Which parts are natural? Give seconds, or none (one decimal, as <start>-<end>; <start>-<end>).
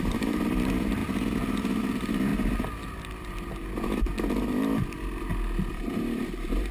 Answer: 1.0-1.8; 2.3-3.2; 3.6-5.7